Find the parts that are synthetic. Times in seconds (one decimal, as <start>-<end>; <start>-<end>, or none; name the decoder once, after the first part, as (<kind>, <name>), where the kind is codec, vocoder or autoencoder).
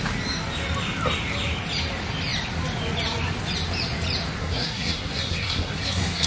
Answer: 4.4-6.3 (codec, SNAC)